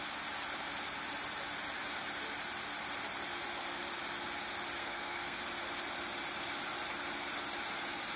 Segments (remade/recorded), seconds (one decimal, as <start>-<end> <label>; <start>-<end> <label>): 0.0-4.8 recorded; 4.8-5.4 remade; 5.4-8.2 recorded